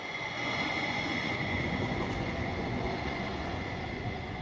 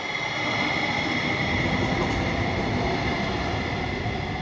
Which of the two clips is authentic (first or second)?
second